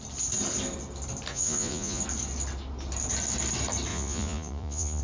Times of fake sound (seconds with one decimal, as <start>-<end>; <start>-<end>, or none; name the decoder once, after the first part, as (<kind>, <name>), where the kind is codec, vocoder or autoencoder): 1.3-2.0 (vocoder, Vocos); 3.9-5.0